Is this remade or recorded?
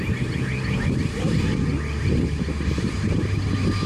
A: recorded